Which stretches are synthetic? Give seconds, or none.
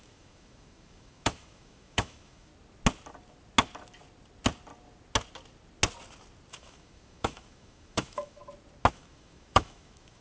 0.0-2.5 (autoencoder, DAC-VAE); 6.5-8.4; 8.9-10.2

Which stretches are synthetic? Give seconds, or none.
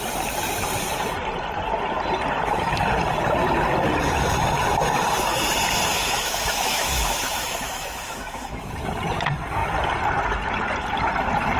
5.9-8.7 (autoencoder, DAC-VAE)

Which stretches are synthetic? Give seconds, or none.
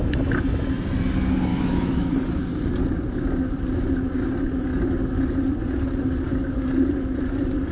1.5-2.1 (autoencoder, DAC-VAE)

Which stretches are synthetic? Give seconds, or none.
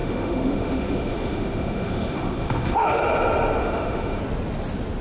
0.0-3.0 (autoencoder, DAC-VAE); 3.6-4.2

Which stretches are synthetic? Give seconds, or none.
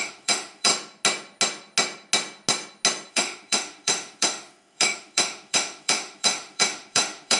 0.0-0.7 (autoencoder, DAC-VAE); 3.1-7.4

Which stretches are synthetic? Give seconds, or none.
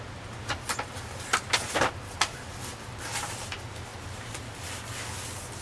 none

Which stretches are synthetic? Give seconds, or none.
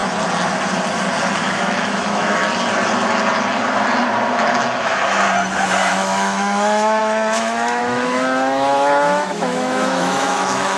1.4-2.4 (autoencoder, DAC-VAE); 5.9-10.8